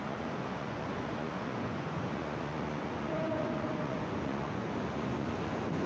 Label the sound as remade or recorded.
remade